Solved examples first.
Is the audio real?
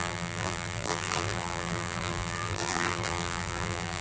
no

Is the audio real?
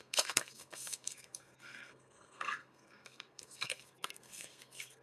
no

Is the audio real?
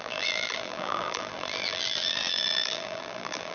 no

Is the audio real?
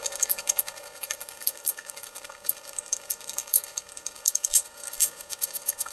no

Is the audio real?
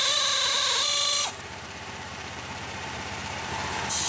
no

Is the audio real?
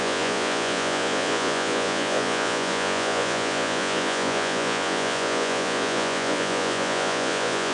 no